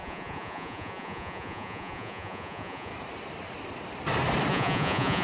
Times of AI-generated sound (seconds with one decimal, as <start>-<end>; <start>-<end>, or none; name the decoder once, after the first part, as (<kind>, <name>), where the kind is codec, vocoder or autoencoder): 0.0-2.9 (vocoder, Vocos); 4.5-5.2